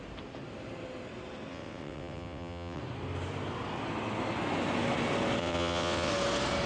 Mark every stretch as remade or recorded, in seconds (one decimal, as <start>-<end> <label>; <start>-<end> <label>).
0.0-1.5 recorded; 1.5-2.8 remade; 2.8-5.4 recorded; 5.4-6.1 remade; 6.1-6.7 recorded